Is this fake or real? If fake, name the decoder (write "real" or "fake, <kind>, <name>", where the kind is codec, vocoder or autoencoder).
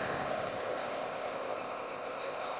fake, codec, ZipCodec